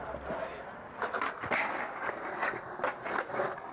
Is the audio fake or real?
real